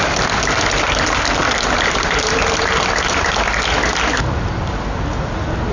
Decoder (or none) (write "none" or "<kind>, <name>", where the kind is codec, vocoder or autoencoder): none